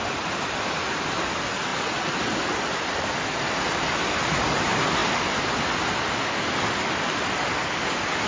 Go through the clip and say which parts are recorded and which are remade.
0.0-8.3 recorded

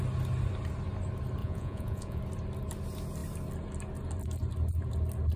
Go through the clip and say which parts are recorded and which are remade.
0.0-1.4 recorded; 1.4-2.2 remade; 2.2-5.4 recorded

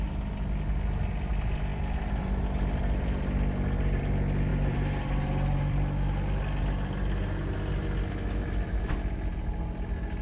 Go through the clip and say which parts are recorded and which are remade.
0.0-1.7 recorded; 1.7-4.0 remade; 4.0-4.5 recorded; 4.5-6.6 remade; 6.6-10.2 recorded